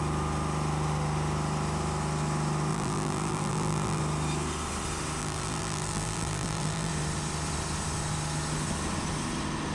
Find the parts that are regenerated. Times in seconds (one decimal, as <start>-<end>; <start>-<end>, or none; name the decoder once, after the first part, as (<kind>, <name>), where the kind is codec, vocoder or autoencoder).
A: 2.7-4.0 (vocoder, BigVGAN v2); 5.2-6.9